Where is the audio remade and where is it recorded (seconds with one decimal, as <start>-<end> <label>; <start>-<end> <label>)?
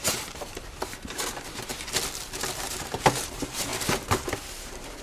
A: 0.0-1.7 remade; 1.7-2.4 recorded; 2.4-3.7 remade; 3.7-4.5 recorded; 4.5-5.0 remade